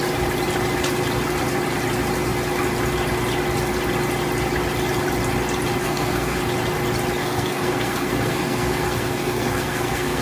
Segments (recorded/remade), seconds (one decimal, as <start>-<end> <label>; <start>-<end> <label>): 0.0-5.8 recorded; 5.8-6.4 remade; 6.4-7.2 recorded; 7.2-10.2 remade